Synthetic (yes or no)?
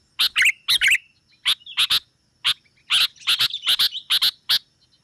no